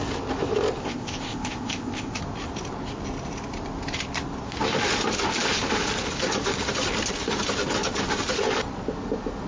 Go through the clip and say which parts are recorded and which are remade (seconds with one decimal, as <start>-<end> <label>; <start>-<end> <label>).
0.0-0.8 recorded; 0.8-2.2 remade; 2.2-9.5 recorded